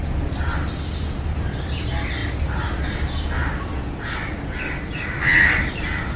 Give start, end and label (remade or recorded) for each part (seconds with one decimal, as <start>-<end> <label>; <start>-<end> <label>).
0.0-6.2 recorded